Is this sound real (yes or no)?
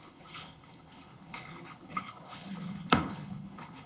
no